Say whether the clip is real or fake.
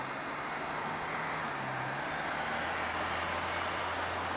real